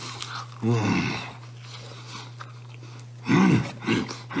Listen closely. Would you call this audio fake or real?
real